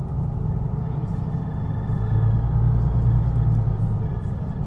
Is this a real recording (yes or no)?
yes